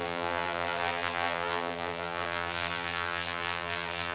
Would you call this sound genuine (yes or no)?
no